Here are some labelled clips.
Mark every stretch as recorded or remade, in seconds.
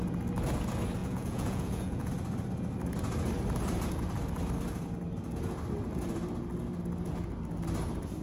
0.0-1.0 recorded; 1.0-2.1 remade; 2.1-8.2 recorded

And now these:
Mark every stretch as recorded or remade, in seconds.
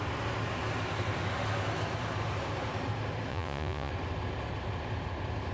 0.0-3.3 recorded; 3.3-3.9 remade; 3.9-5.5 recorded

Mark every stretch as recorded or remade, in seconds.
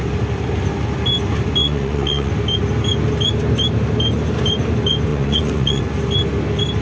0.0-1.6 recorded; 1.6-2.3 remade; 2.3-5.1 recorded; 5.1-5.8 remade; 5.8-6.8 recorded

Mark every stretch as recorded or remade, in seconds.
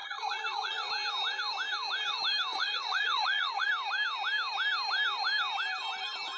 0.0-0.9 remade; 0.9-2.5 recorded; 2.5-3.7 remade; 3.7-6.4 recorded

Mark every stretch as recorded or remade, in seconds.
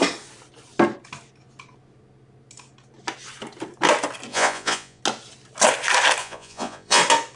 0.0-4.3 recorded; 4.3-5.0 remade; 5.0-6.2 recorded; 6.2-7.0 remade; 7.0-7.4 recorded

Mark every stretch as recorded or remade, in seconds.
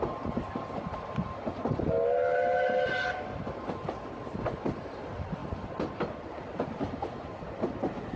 0.0-8.2 recorded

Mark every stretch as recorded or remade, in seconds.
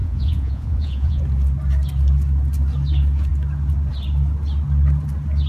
0.0-1.2 remade; 1.2-5.5 recorded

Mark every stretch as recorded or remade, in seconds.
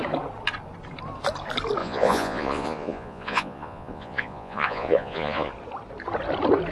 0.0-1.8 recorded; 1.8-5.5 remade; 5.5-6.7 recorded